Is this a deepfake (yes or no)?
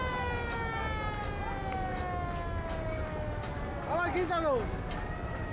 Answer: no